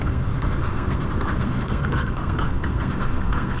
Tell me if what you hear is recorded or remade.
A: remade